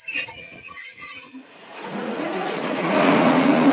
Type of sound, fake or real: fake